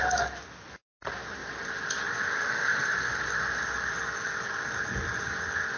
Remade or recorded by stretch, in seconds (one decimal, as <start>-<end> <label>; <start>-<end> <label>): 0.0-1.4 recorded; 1.4-3.6 remade; 3.6-5.8 recorded